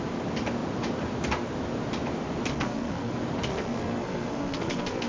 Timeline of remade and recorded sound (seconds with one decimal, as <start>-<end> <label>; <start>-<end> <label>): 0.0-2.5 recorded; 2.5-3.1 remade; 3.1-3.5 recorded; 3.5-5.1 remade